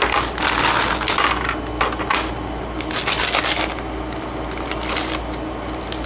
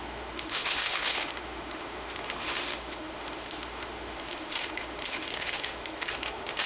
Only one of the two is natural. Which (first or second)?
first